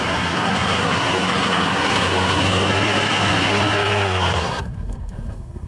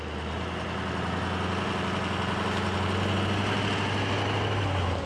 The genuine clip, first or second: second